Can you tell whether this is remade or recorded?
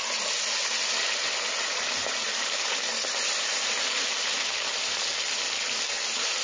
recorded